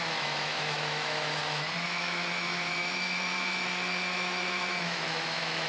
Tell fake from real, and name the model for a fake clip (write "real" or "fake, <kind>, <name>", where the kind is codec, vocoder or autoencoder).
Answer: fake, autoencoder, DAC-VAE